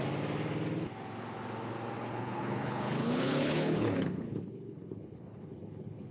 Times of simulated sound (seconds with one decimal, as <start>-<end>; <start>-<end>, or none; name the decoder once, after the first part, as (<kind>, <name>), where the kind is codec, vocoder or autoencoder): 2.0-6.1 (codec, HILCodec)